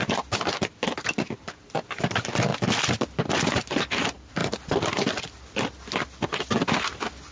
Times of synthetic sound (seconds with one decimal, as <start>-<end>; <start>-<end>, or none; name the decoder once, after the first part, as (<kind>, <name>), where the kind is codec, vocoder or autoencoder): 0.0-7.3 (vocoder, BigVGAN v2)